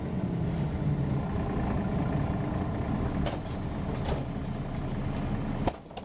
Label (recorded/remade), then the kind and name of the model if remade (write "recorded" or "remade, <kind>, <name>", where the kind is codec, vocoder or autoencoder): recorded